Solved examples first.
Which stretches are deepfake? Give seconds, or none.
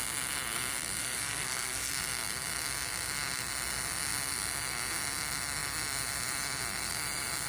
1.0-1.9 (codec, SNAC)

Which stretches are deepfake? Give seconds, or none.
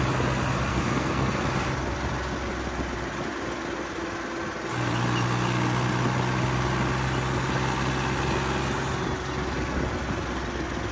0.7-1.3 (codec, SNAC)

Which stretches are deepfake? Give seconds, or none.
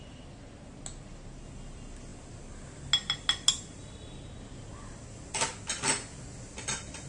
none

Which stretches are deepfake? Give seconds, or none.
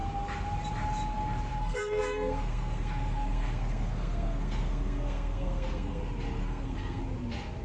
1.5-6.0 (codec, SNAC); 6.4-7.0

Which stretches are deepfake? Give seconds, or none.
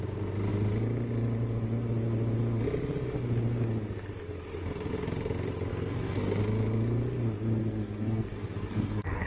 5.7-6.4 (codec, SNAC); 7.6-9.3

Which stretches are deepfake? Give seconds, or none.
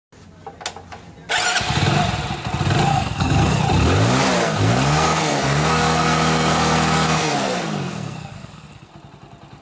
2.9-3.6 (codec, SNAC); 4.4-8.9